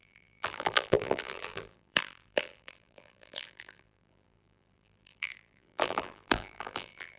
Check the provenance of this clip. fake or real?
fake